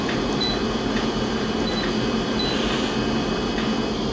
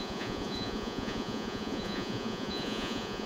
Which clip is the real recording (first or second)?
first